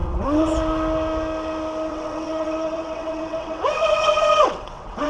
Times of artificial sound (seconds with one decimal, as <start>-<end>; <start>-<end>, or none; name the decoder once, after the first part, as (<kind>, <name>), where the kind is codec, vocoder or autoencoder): 0.0-0.6 (vocoder, WaveNeXt); 1.9-5.1